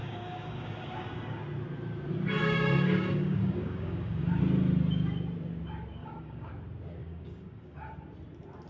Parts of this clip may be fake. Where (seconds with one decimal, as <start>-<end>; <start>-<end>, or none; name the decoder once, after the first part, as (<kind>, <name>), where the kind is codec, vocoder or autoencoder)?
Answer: 0.0-1.4 (codec, DAC); 2.4-4.4; 6.0-6.5; 7.0-7.9